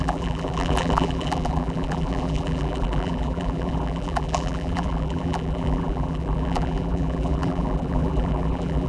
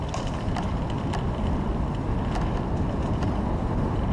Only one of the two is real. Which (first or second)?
second